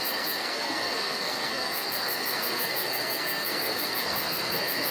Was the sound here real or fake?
fake